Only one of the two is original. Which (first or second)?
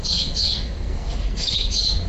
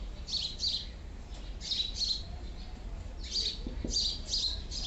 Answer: second